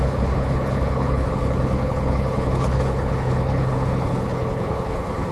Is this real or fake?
fake